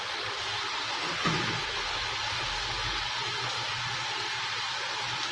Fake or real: real